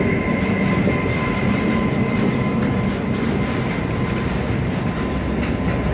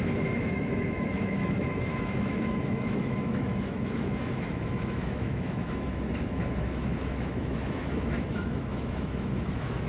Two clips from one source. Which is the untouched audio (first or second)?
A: first